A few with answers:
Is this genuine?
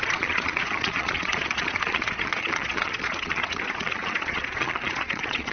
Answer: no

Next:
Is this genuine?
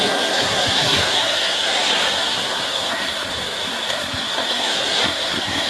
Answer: no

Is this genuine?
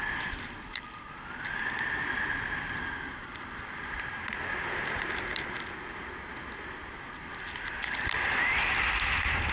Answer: yes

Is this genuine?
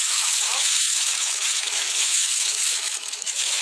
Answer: no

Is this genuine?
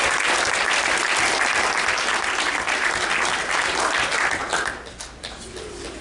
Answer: no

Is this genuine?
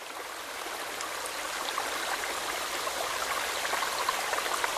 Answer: yes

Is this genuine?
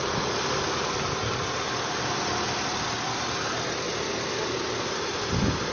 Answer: yes